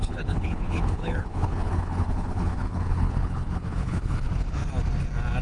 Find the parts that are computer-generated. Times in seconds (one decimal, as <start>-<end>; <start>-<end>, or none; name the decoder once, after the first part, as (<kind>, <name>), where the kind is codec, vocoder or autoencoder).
0.0-4.6 (codec, HILCodec)